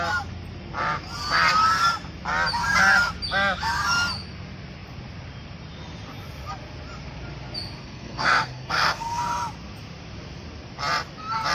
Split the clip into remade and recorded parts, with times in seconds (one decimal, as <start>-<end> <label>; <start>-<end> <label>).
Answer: 0.0-7.8 recorded; 7.8-9.2 remade; 9.2-11.5 recorded